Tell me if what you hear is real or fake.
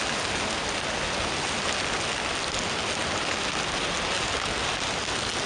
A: real